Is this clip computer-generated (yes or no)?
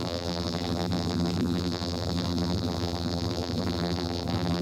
yes